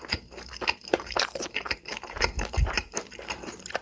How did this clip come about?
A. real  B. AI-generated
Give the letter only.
B